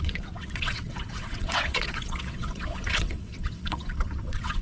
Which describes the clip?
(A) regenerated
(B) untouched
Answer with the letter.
A